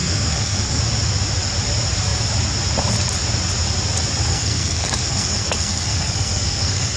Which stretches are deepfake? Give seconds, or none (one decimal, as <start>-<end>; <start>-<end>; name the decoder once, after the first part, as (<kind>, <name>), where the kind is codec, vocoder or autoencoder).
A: 0.0-0.8 (codec, SNAC); 4.3-7.0